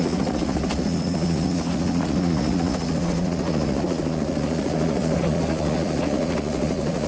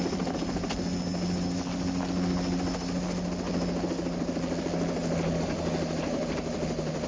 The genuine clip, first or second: second